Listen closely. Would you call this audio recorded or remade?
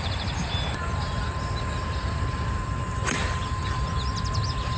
remade